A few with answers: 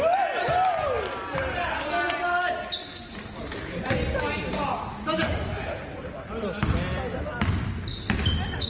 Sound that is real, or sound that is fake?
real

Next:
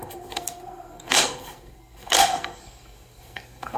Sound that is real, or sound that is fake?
fake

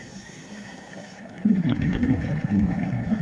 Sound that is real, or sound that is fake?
fake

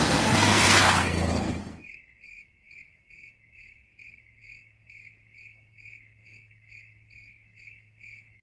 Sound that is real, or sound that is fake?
fake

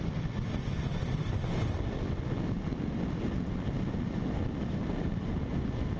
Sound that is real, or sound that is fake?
real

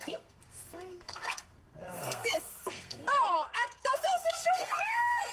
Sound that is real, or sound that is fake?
fake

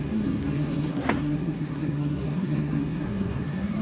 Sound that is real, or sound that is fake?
fake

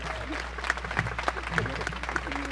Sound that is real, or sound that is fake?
real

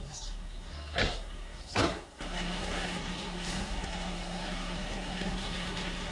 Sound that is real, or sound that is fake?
fake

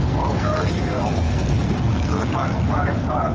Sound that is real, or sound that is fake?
fake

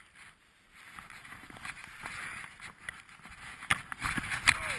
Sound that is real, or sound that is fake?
real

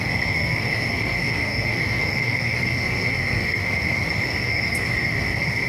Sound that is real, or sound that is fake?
fake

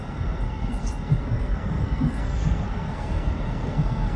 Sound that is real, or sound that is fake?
fake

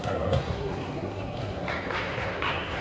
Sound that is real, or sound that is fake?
fake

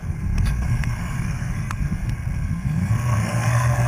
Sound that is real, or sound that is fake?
fake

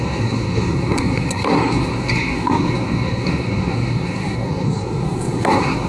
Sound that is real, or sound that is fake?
fake